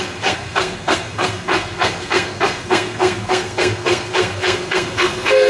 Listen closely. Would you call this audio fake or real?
fake